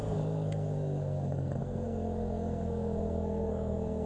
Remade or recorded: remade